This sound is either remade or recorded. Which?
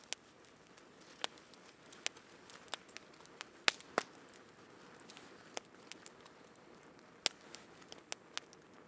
recorded